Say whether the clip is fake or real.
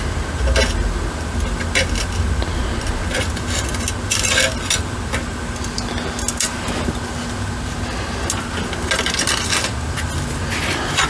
real